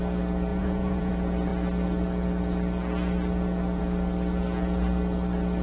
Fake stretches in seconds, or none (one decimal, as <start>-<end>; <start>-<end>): 0.5-1.1